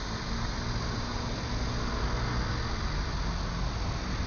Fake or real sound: real